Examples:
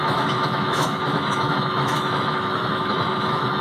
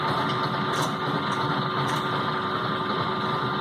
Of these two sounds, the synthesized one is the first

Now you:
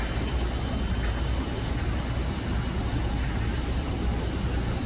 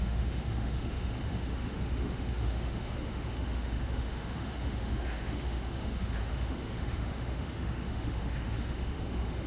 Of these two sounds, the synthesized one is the second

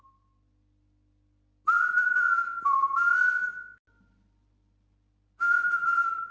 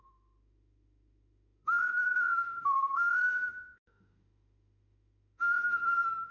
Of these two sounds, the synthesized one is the second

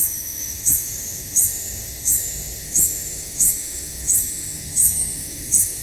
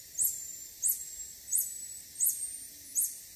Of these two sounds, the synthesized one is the first